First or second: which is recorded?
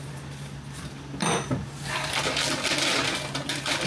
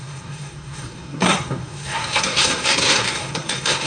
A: first